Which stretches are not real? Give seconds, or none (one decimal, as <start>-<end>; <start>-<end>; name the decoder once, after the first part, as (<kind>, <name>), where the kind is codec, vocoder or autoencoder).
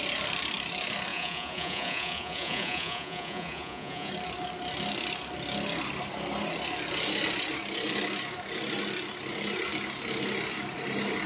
1.1-4.1 (vocoder, Vocos)